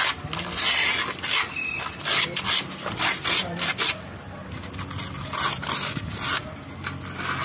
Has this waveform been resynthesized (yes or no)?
no